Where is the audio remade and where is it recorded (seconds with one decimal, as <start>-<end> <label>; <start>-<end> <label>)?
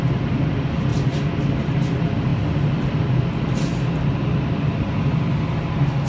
0.0-6.1 recorded